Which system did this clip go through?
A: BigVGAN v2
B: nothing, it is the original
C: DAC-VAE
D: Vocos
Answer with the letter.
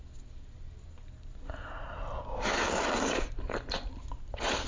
B